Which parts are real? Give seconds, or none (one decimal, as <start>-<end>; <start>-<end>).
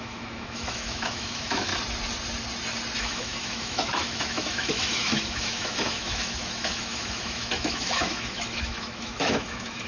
1.7-3.0